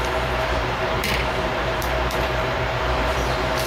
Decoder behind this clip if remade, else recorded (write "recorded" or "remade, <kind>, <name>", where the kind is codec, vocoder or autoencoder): remade, vocoder, BigVGAN v2